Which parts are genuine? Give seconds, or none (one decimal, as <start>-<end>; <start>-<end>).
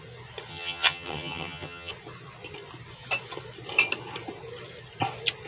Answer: 0.0-0.5; 1.9-5.5